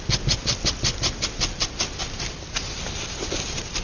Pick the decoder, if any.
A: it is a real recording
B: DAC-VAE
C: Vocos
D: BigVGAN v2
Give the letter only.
A